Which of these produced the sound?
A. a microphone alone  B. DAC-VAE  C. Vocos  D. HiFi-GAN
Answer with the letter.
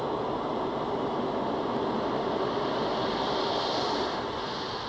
A